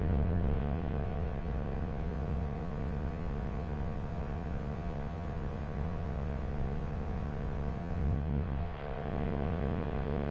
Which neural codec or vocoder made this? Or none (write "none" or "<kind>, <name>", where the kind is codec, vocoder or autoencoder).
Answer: vocoder, WaveNeXt